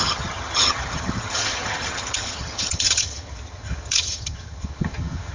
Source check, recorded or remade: remade